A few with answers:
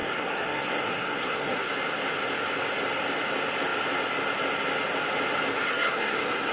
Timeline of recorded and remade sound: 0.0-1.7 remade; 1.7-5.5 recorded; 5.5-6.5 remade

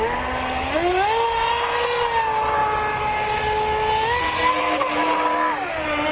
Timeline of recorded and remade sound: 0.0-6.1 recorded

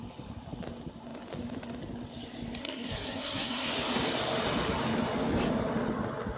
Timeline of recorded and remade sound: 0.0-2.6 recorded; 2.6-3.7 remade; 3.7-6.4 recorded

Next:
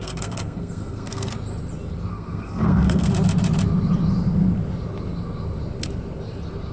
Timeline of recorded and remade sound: 0.0-1.3 remade; 1.3-2.1 recorded; 2.1-3.1 remade; 3.1-6.7 recorded